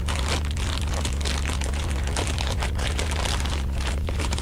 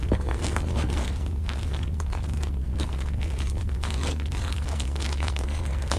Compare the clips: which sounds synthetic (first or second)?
second